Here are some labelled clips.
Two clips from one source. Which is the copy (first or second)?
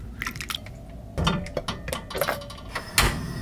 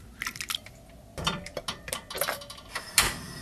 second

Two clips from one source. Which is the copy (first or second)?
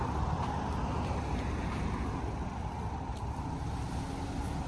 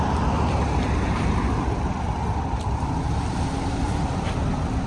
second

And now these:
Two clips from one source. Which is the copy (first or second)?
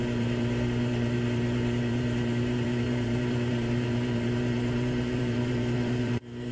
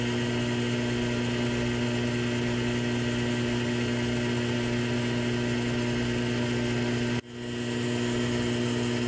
first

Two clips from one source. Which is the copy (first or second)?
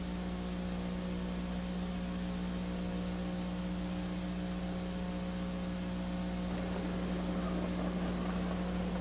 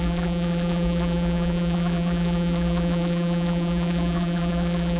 second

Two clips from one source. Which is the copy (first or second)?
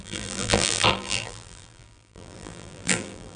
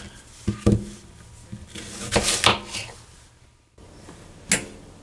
first